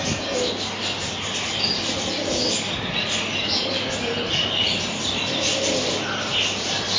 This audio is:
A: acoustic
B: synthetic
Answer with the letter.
A